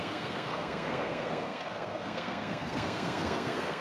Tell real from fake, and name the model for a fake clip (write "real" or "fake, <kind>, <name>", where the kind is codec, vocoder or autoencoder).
fake, codec, SNAC